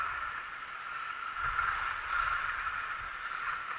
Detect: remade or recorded remade